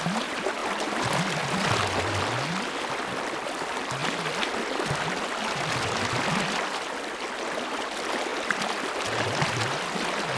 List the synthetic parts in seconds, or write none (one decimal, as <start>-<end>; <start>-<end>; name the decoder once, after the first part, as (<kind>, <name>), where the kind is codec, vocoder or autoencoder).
none